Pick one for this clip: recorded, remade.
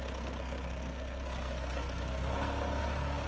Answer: remade